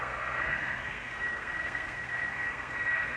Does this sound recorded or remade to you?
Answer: remade